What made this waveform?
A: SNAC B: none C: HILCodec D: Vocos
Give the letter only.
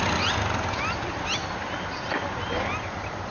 B